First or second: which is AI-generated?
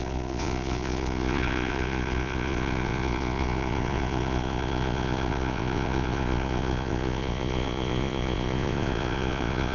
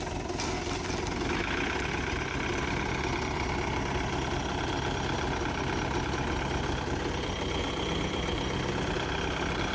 first